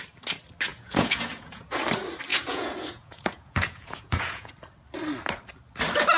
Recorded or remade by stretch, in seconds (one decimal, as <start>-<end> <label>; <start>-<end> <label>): 0.0-0.7 recorded; 0.7-1.8 remade; 1.8-2.3 recorded; 2.3-4.5 remade; 4.5-6.2 recorded